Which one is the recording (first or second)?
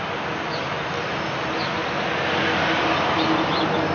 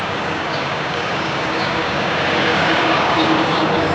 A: first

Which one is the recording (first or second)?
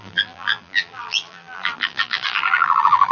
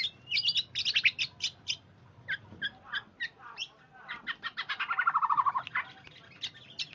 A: second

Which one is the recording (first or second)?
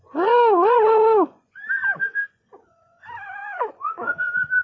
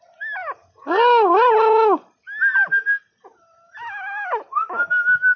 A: second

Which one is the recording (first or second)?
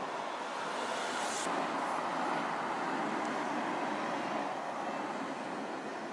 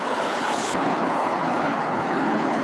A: first